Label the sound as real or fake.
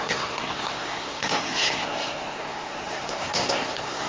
fake